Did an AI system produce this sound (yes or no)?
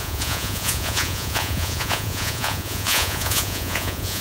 yes